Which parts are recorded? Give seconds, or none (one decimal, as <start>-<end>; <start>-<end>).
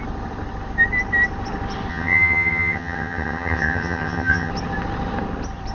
0.0-1.9; 4.5-5.7